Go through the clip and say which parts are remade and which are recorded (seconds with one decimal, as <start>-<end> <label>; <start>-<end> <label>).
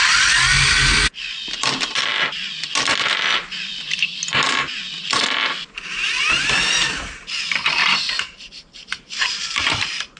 0.0-7.8 recorded; 7.8-10.2 remade